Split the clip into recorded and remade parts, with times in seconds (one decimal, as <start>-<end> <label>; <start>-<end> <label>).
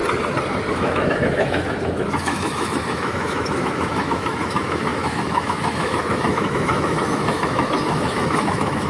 0.0-0.7 recorded; 0.7-8.9 remade